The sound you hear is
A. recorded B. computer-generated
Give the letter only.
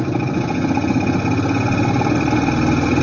A